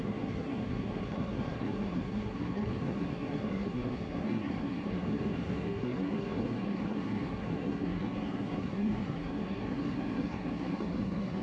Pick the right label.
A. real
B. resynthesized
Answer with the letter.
B